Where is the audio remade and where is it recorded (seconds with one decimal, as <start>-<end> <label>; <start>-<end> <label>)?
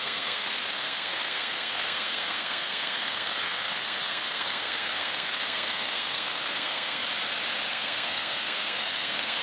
0.0-7.0 remade; 7.0-7.7 recorded; 7.7-9.4 remade